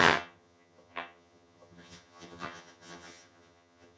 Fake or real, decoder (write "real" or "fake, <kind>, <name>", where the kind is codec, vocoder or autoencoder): fake, vocoder, HiFi-GAN